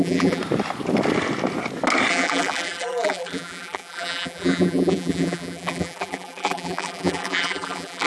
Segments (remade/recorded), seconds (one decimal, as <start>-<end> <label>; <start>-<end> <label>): 0.0-0.4 remade; 0.4-2.1 recorded; 2.1-8.1 remade